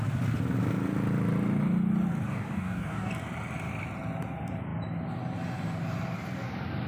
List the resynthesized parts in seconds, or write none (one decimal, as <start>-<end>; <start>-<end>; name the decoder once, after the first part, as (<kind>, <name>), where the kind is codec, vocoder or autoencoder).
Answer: 2.3-3.1 (codec, DAC)